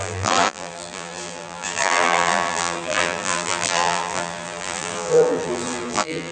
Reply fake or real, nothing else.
fake